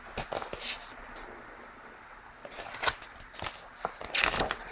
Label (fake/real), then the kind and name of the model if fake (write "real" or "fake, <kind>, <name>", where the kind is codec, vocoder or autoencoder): real